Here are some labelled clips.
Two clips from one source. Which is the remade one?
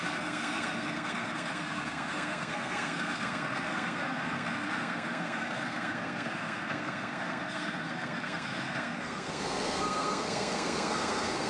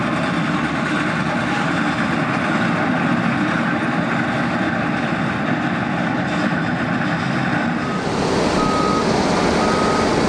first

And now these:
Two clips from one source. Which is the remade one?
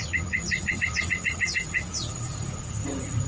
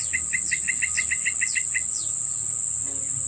first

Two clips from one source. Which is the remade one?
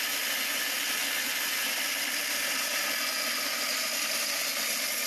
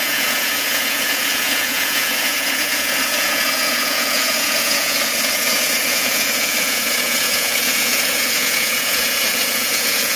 second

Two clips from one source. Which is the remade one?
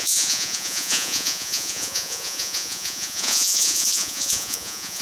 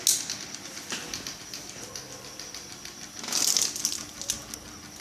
first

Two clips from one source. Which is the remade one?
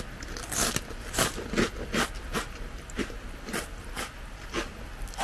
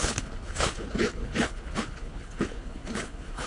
second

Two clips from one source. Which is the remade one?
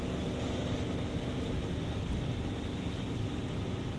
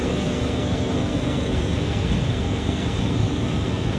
second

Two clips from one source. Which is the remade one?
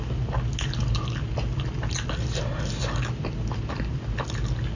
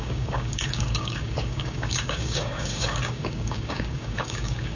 second